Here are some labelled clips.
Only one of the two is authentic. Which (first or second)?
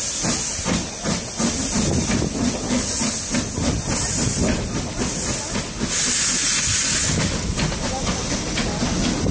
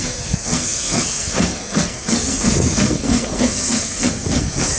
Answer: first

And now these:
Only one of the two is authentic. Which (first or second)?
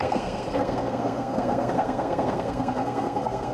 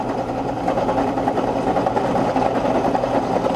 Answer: second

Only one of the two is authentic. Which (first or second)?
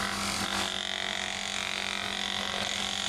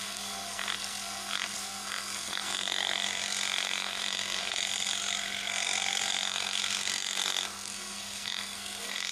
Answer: first